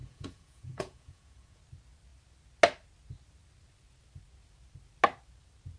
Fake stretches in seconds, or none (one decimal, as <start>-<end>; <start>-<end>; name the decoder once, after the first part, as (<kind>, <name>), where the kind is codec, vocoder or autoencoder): 0.0-1.6 (vocoder, Vocos)